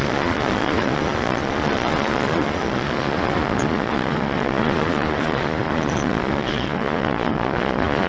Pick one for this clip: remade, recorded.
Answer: remade